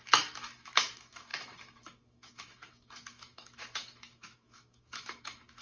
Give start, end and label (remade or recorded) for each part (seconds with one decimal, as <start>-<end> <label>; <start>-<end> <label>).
0.0-5.6 remade